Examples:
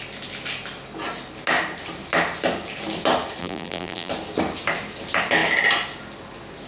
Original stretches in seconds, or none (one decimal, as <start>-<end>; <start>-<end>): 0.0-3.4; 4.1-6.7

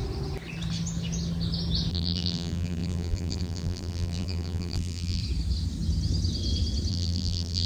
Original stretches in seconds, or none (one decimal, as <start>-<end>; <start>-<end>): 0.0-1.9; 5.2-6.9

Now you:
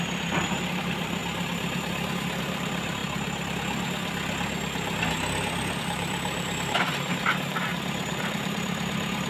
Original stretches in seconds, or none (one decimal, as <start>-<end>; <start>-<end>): 1.2-2.4; 3.0-5.8

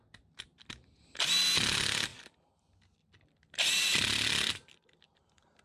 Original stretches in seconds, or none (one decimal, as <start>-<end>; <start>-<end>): 0.0-0.5; 1.4-2.1

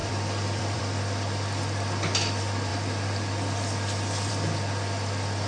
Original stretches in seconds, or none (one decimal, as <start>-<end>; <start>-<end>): 0.8-5.5

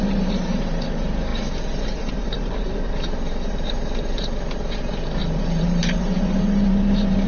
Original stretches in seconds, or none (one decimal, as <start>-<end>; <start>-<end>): none

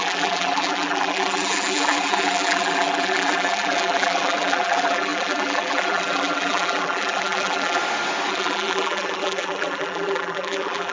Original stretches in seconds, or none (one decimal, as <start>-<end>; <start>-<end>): 7.8-8.3